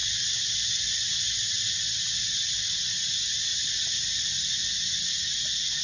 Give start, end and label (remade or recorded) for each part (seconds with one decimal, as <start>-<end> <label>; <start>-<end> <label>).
0.0-5.8 recorded

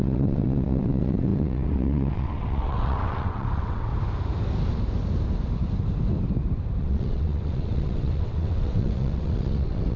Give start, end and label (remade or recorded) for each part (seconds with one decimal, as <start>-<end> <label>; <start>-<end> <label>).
0.0-3.9 remade; 3.9-6.8 recorded; 6.8-10.0 remade

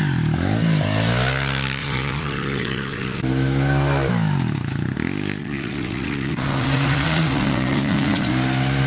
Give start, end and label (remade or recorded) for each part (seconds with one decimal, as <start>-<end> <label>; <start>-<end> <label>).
0.0-1.8 recorded; 1.8-3.2 remade; 3.2-5.4 recorded; 5.4-8.3 remade; 8.3-8.9 recorded

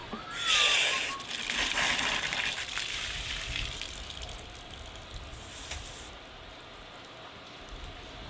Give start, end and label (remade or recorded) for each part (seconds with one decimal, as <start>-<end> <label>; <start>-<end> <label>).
0.0-8.3 recorded